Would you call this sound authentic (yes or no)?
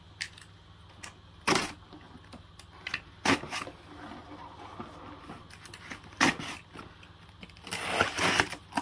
yes